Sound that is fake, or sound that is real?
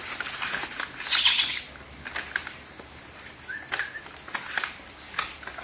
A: real